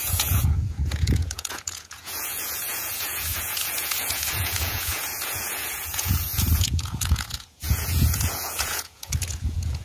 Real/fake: fake